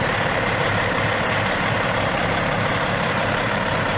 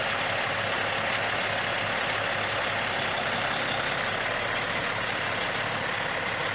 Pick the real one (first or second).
second